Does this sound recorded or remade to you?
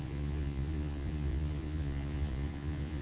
remade